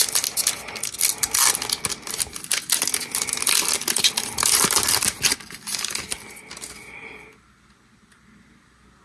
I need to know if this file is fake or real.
real